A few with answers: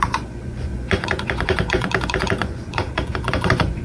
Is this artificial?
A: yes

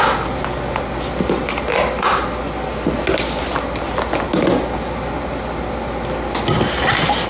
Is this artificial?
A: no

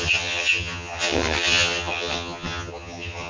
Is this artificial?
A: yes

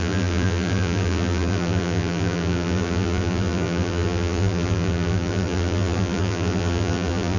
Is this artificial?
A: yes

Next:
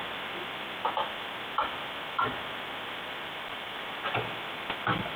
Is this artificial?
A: no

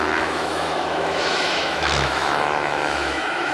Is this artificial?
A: yes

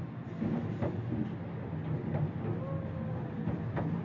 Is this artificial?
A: no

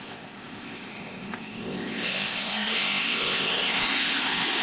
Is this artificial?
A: yes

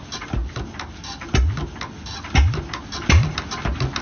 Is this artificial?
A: no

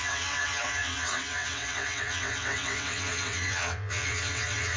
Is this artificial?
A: yes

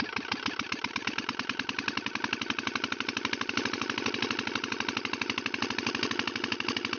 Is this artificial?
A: no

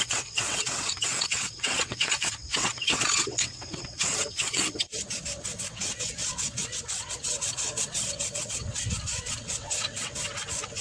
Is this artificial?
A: yes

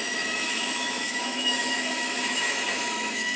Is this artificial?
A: yes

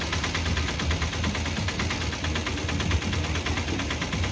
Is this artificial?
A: no